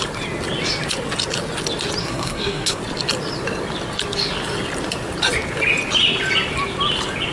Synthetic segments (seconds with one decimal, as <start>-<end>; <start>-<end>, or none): 2.0-2.8